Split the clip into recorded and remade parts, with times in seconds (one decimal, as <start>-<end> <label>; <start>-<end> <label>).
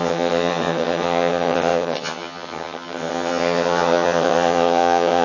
0.0-5.2 remade